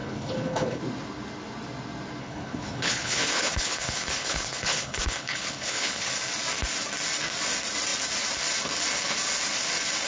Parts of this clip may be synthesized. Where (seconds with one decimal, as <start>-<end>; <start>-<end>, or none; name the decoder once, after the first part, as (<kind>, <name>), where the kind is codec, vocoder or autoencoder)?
0.0-0.8 (codec, HILCodec); 2.2-6.1